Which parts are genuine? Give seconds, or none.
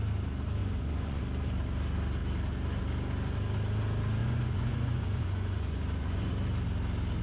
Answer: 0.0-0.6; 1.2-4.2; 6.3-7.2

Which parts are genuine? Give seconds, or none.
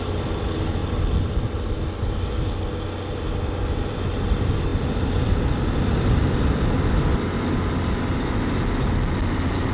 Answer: 0.0-9.7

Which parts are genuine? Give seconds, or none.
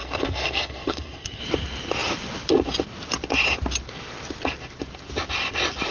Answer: 1.4-5.9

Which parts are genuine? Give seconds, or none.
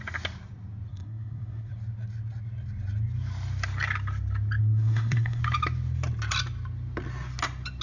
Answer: 0.0-0.9; 1.7-4.6; 5.4-7.8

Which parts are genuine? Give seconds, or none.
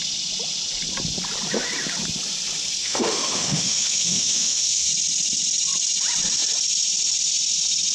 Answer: 0.0-2.8; 4.9-7.9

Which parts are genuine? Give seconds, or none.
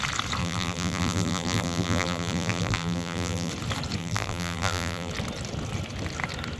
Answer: 0.0-0.4; 3.5-4.0; 5.1-6.6